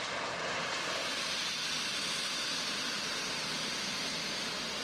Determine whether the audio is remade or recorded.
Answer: recorded